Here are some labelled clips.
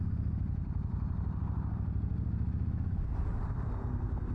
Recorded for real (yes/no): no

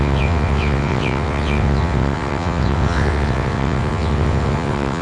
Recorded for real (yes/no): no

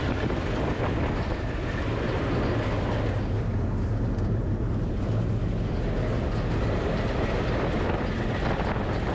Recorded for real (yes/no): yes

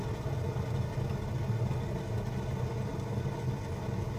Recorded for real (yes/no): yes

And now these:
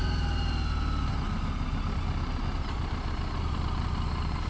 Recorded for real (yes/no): yes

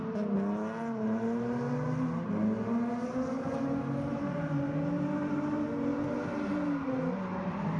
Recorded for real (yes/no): yes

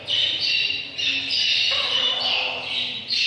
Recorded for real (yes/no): yes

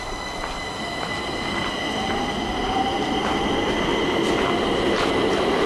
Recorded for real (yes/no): yes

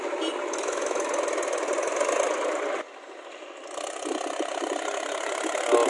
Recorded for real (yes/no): yes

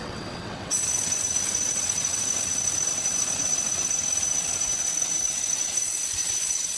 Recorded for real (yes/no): no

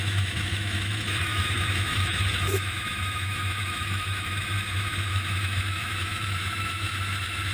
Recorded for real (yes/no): no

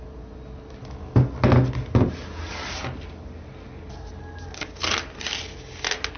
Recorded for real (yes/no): yes